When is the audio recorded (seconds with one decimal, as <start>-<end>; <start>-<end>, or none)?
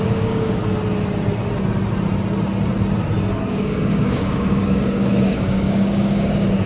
0.6-3.5